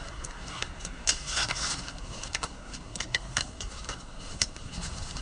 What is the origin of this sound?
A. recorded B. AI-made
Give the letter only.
B